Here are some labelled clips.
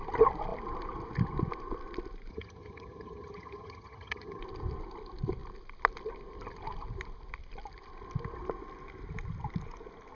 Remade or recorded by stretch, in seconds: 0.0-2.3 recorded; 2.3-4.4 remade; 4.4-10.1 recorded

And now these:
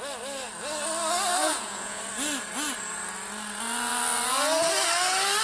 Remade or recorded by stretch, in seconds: 0.0-1.4 recorded; 1.4-2.0 remade; 2.0-5.4 recorded

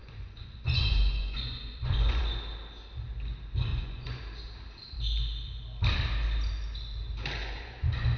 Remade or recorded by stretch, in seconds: 0.0-2.2 remade; 2.2-3.7 recorded; 3.7-4.2 remade; 4.2-7.4 recorded; 7.4-8.2 remade

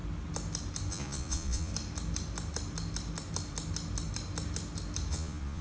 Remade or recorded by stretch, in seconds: 0.0-0.9 recorded; 0.9-1.7 remade; 1.7-5.1 recorded; 5.1-5.6 remade

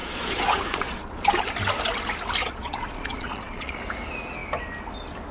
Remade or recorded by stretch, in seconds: 0.0-1.4 remade; 1.4-2.4 recorded; 2.4-3.8 remade; 3.8-5.3 recorded

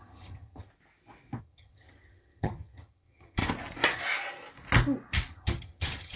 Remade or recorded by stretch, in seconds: 0.0-0.7 remade; 0.7-1.4 recorded; 1.4-3.4 remade; 3.4-5.3 recorded; 5.3-6.2 remade

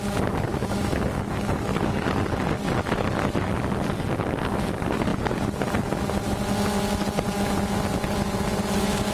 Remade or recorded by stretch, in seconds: 0.0-0.5 recorded; 0.5-2.3 remade; 2.3-9.1 recorded

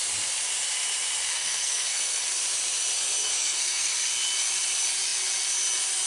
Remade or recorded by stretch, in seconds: 0.0-1.3 recorded; 1.3-2.4 remade; 2.4-3.2 recorded; 3.2-3.9 remade; 3.9-6.1 recorded